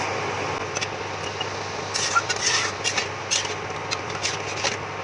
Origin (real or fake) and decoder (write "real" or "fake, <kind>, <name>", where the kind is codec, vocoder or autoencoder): real